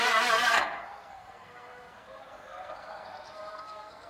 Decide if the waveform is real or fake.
fake